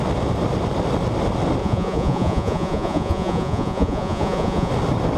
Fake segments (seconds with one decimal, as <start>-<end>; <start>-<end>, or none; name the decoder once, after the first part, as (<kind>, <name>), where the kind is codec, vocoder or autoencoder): 1.6-4.7 (vocoder, Vocos)